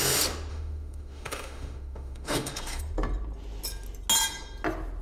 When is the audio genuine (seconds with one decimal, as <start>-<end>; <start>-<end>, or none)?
0.0-0.5; 2.8-5.0